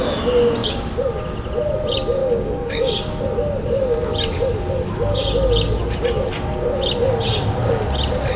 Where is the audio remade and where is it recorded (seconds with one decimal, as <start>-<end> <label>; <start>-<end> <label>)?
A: 0.0-2.2 recorded; 2.2-2.9 remade; 2.9-8.4 recorded